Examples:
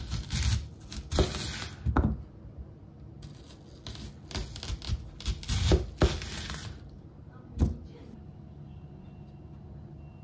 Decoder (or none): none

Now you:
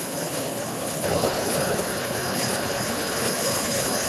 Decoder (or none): codec, HILCodec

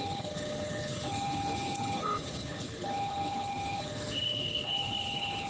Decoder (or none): codec, HILCodec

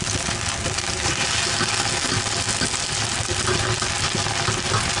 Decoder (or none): none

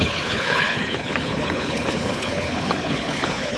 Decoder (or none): codec, HILCodec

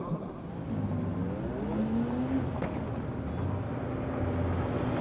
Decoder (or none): none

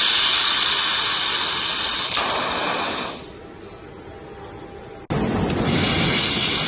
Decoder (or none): none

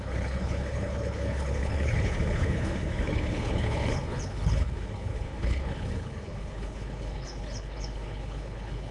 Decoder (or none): codec, HILCodec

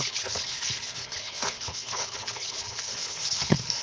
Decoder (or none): codec, HILCodec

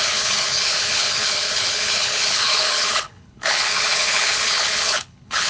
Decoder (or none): codec, HILCodec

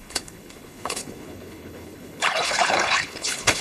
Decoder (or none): codec, HILCodec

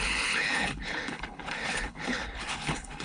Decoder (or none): codec, HILCodec